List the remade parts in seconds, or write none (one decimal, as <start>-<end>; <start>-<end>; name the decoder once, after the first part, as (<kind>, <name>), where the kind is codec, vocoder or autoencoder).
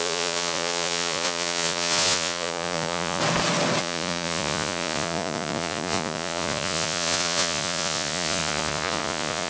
0.0-3.2 (vocoder, Vocos); 3.8-9.5